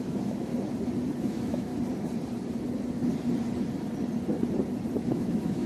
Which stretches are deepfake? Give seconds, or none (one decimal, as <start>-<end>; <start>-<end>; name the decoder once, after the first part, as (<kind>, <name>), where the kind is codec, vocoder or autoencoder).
0.0-0.5 (autoencoder, DAC-VAE); 1.2-1.7; 5.1-5.7